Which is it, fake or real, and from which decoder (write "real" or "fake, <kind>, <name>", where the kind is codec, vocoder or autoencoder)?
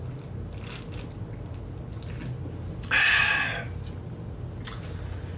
real